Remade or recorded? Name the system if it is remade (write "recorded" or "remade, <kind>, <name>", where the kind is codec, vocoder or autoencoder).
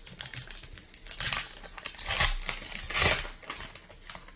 recorded